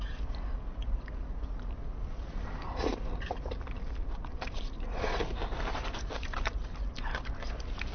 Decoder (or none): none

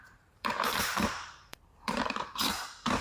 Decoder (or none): vocoder, BigVGAN v2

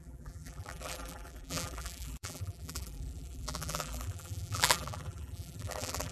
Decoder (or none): vocoder, BigVGAN v2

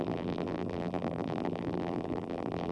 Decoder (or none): vocoder, BigVGAN v2